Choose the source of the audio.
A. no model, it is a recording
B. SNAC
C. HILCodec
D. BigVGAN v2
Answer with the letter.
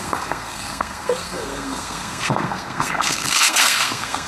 B